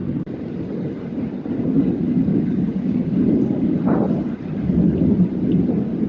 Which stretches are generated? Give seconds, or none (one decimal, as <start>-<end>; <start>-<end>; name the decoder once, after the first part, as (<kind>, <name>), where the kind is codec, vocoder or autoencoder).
2.3-3.1 (codec, DAC)